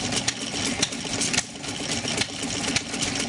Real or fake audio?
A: real